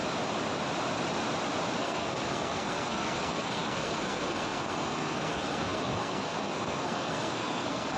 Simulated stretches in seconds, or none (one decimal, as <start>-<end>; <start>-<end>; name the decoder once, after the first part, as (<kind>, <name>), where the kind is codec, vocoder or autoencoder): 1.8-8.0 (codec, SNAC)